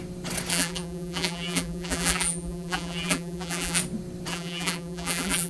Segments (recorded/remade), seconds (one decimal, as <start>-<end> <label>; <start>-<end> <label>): 0.0-0.5 recorded; 0.5-3.8 remade; 3.8-4.3 recorded; 4.3-5.5 remade